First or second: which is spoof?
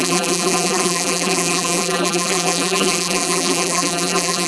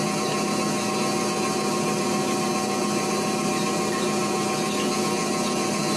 first